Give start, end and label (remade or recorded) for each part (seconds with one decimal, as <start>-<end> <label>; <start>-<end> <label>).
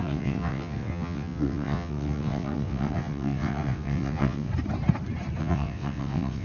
0.0-4.5 remade; 4.5-5.4 recorded; 5.4-6.4 remade